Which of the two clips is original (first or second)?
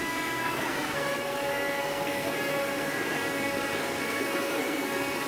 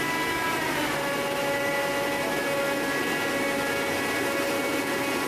second